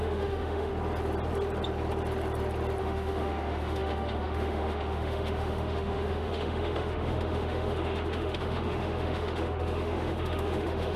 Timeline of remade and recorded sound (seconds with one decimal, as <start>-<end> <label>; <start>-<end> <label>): 0.0-0.7 remade; 0.7-2.8 recorded; 2.8-11.0 remade